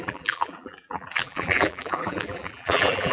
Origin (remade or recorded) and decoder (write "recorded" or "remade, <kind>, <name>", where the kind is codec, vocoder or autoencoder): remade, vocoder, BigVGAN v2